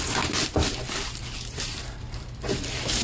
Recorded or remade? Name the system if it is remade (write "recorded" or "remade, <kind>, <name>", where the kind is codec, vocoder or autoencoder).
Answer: remade, vocoder, BigVGAN v2